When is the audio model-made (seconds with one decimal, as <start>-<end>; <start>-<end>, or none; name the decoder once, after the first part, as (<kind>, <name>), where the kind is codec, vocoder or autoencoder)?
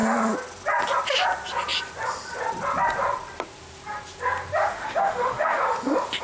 4.7-5.6 (autoencoder, DAC-VAE)